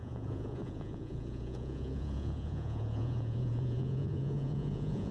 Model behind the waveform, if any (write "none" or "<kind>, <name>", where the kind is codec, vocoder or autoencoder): vocoder, Vocos